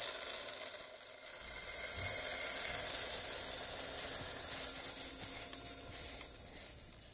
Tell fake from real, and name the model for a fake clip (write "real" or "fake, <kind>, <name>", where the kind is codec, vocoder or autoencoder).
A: real